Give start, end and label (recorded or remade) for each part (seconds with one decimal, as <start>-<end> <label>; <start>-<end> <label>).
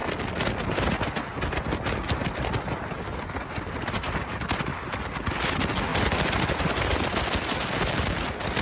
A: 0.0-8.6 recorded